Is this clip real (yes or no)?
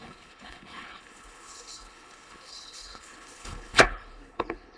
no